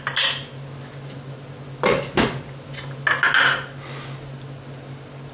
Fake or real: real